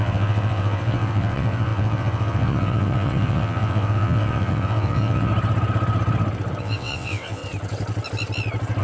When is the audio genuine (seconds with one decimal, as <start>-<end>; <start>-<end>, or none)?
5.3-6.6; 7.4-8.8